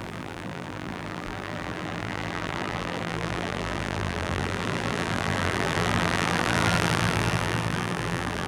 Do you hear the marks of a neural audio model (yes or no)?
yes